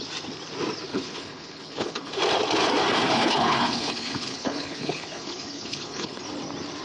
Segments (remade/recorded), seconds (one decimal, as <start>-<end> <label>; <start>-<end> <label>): 0.0-0.9 recorded; 0.9-2.1 remade; 2.1-3.1 recorded; 3.1-6.2 remade; 6.2-6.8 recorded